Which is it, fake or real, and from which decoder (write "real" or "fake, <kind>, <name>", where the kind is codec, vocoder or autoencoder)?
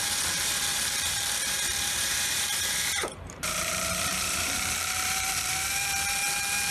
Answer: fake, vocoder, BigVGAN v2